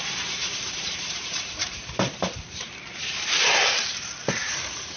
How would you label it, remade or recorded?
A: remade